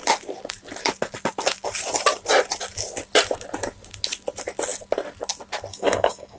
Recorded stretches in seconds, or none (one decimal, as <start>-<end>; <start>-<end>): 0.0-5.7